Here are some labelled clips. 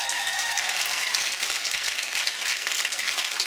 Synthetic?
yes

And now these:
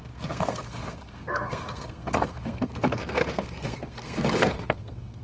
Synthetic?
yes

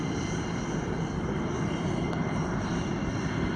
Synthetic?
no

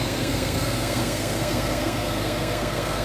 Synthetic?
yes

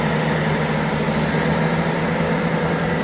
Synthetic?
no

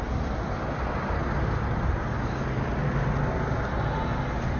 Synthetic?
no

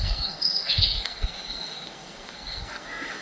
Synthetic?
yes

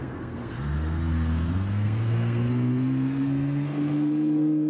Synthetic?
yes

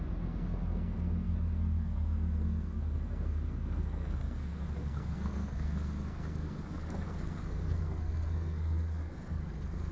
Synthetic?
yes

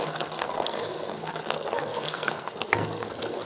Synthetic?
yes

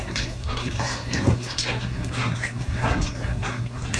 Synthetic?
yes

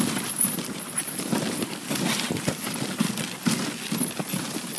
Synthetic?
no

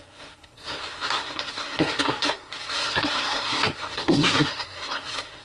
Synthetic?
yes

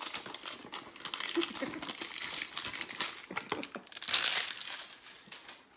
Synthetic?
no